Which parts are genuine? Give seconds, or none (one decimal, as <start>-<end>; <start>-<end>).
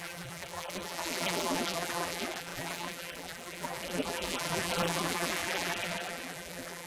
none